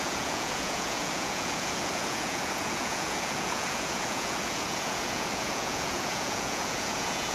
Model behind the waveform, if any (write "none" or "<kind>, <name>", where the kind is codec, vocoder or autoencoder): vocoder, Vocos